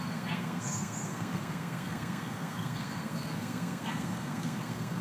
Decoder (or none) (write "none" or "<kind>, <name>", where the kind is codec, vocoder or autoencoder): codec, SNAC